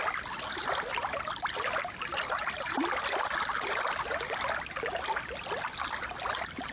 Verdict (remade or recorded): recorded